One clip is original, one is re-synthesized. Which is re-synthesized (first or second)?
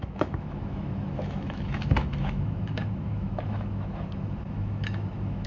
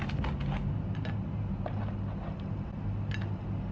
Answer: first